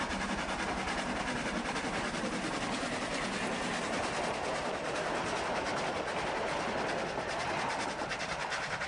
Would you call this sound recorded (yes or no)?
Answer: yes